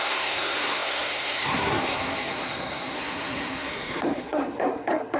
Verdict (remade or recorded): remade